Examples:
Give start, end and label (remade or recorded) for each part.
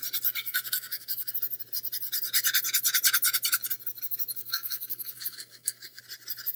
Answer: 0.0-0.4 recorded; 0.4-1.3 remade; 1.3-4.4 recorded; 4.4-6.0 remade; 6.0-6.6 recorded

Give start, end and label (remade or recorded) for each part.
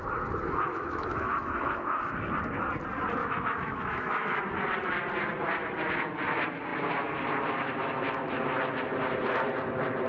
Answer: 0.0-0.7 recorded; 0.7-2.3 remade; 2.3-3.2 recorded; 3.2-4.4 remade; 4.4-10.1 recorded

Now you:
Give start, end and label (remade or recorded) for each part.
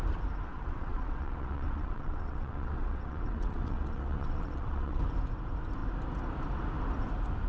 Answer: 0.0-0.5 recorded; 0.5-5.0 remade; 5.0-7.5 recorded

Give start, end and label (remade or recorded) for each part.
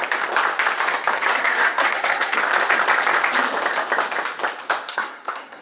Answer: 0.0-1.1 recorded; 1.1-2.4 remade; 2.4-4.9 recorded; 4.9-5.6 remade